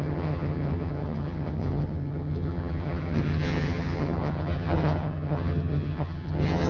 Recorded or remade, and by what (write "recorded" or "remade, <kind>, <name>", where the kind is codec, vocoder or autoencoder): remade, vocoder, HiFi-GAN